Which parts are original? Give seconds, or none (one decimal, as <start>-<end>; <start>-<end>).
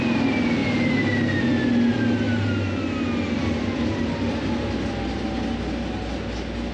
0.0-6.7